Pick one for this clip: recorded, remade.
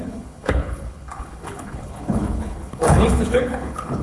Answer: remade